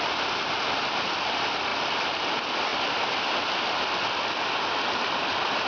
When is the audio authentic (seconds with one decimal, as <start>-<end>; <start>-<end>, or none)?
0.0-5.7